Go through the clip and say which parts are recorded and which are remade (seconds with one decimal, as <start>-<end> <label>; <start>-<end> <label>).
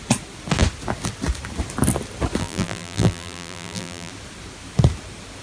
0.0-2.4 recorded; 2.4-4.1 remade; 4.1-5.4 recorded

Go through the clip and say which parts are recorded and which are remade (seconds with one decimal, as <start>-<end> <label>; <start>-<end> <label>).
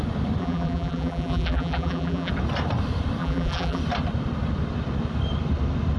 0.0-0.4 recorded; 0.4-2.3 remade; 2.3-3.2 recorded; 3.2-3.8 remade; 3.8-6.0 recorded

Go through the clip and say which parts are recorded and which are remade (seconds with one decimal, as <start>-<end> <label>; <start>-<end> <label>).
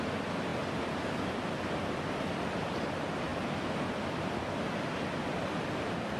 0.0-6.2 recorded